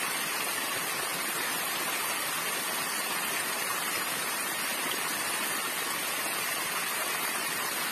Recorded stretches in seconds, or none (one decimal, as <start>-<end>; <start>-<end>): 0.0-7.9